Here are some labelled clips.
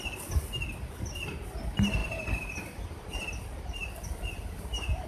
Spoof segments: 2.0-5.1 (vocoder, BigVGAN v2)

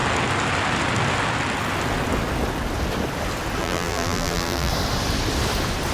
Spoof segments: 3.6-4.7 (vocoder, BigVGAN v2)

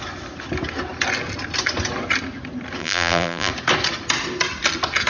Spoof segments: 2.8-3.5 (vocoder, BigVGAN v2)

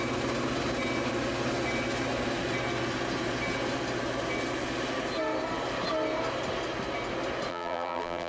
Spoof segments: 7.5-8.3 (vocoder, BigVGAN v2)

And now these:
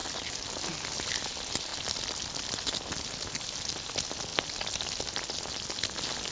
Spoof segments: 1.7-2.3 (vocoder, BigVGAN v2)

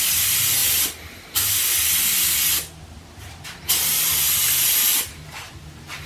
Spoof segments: 0.6-1.4 (vocoder, BigVGAN v2); 4.9-5.6

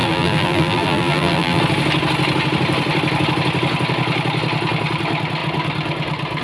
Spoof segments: 0.0-1.6 (vocoder, BigVGAN v2)

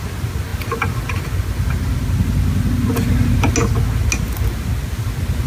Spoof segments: none